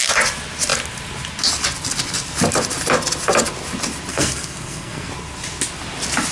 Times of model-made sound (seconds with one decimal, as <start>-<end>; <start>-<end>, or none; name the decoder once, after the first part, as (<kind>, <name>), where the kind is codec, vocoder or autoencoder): 4.1-5.1 (codec, SNAC)